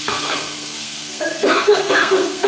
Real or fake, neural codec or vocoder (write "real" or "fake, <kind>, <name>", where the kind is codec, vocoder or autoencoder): fake, codec, SNAC